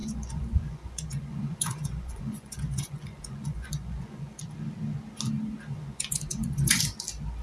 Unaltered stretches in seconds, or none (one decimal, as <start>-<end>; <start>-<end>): 4.4-5.7; 6.8-7.4